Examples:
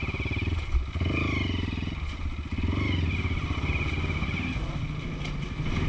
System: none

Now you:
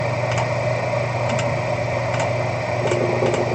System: none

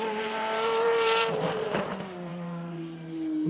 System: vocoder, BigVGAN v2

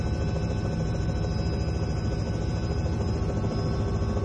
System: none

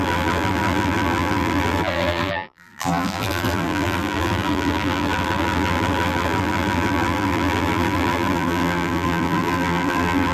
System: vocoder, BigVGAN v2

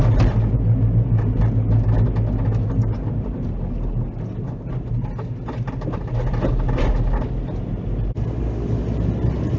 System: none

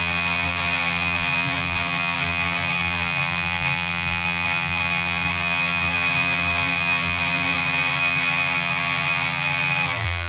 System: vocoder, BigVGAN v2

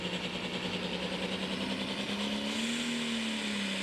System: none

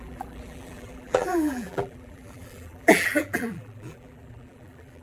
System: vocoder, BigVGAN v2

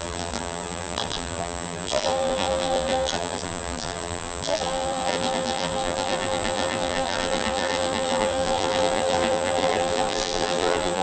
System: vocoder, BigVGAN v2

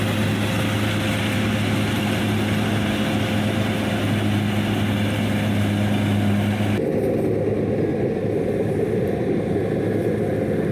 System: none